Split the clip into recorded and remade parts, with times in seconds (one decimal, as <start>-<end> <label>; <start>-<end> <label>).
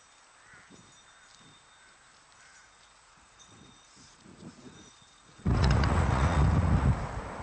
0.0-2.5 recorded; 2.5-6.9 remade; 6.9-7.4 recorded